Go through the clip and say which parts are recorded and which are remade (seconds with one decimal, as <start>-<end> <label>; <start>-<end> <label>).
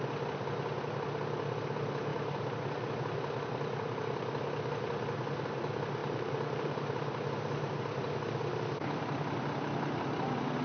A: 0.0-6.0 recorded; 6.0-7.7 remade; 7.7-10.6 recorded